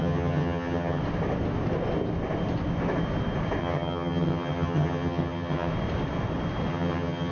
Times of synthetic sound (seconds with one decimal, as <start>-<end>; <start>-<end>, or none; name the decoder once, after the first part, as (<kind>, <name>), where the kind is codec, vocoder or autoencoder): 0.0-1.0 (vocoder, HiFi-GAN); 3.6-5.7; 6.7-7.3